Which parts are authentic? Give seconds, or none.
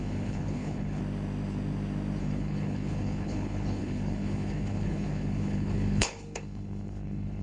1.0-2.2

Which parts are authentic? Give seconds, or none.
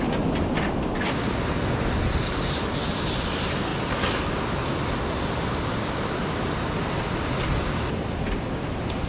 0.0-9.1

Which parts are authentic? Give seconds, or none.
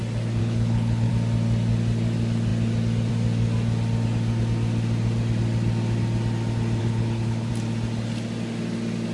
0.0-0.4; 1.1-6.8; 7.5-9.1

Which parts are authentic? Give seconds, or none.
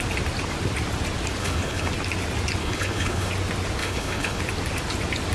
0.0-1.4; 1.9-2.6; 3.3-3.8; 4.4-5.3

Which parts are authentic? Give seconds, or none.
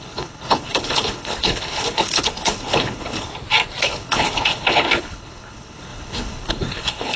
3.3-3.8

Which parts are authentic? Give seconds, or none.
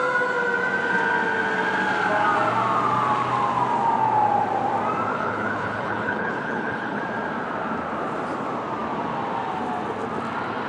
0.0-5.1; 7.0-10.7